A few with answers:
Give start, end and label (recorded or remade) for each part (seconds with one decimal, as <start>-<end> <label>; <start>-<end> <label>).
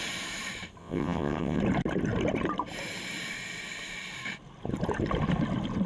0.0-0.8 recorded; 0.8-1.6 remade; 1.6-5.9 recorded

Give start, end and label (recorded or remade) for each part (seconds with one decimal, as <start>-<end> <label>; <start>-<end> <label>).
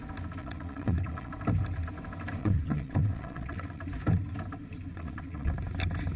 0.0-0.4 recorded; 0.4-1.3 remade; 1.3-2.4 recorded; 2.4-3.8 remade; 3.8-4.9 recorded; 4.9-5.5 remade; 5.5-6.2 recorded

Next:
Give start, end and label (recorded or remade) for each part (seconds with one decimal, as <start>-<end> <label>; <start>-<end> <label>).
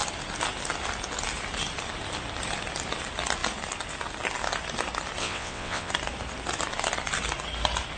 0.0-5.2 recorded; 5.2-5.9 remade; 5.9-8.0 recorded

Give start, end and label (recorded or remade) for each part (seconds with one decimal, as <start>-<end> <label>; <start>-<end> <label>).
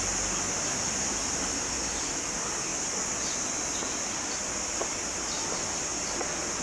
0.0-6.6 recorded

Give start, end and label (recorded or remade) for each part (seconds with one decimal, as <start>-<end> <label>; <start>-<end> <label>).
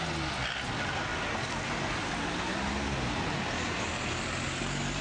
0.0-5.0 recorded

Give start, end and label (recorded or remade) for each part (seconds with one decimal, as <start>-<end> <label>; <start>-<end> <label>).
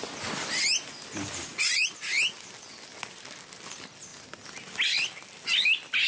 0.0-6.1 recorded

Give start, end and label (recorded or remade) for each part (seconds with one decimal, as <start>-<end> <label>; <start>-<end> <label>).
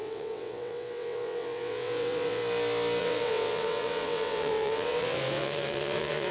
0.0-2.4 remade; 2.4-3.0 recorded; 3.0-6.3 remade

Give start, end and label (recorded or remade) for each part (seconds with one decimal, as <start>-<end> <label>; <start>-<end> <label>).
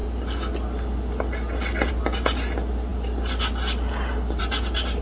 0.0-5.0 recorded